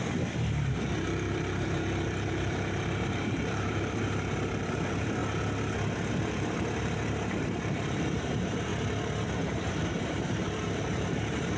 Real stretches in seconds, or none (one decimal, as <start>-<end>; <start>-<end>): 5.2-6.1; 8.7-9.7

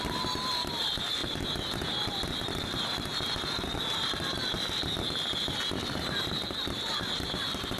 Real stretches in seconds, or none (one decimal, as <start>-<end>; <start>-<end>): 0.0-7.8

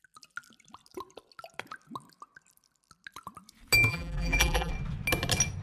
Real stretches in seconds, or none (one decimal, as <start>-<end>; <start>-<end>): 0.0-3.9; 4.7-5.6